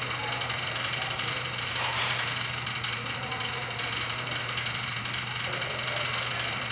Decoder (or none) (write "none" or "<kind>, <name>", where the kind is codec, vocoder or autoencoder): vocoder, BigVGAN v2